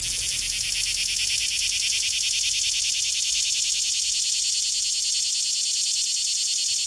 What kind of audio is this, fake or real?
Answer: real